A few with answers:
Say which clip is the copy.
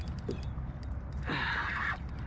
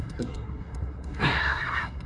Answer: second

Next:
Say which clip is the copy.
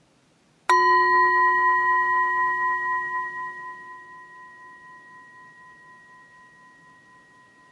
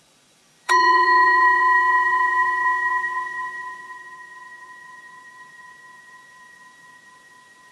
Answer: second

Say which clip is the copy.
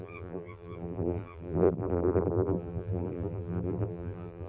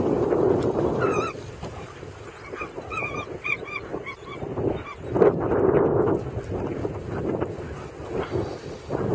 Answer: first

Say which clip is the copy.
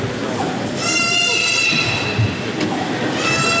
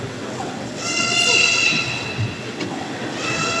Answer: second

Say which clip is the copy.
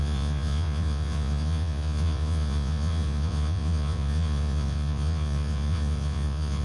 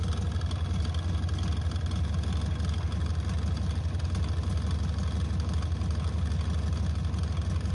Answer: first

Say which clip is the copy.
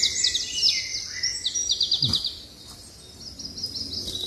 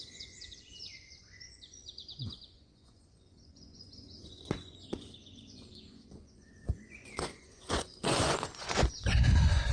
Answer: second